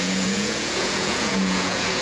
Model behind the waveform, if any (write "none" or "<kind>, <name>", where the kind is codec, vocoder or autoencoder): vocoder, Vocos